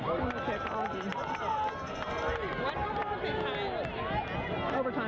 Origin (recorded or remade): recorded